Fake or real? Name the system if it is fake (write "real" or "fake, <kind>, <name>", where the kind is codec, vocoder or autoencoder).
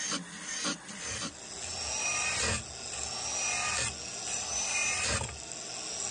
real